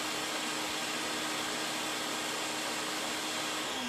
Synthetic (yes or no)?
no